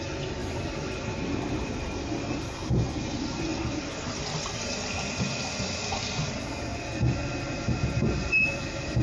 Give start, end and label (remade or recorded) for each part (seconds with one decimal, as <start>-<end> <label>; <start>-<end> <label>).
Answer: 0.0-0.4 recorded; 0.4-2.7 remade; 2.7-3.5 recorded; 3.5-5.1 remade; 5.1-9.0 recorded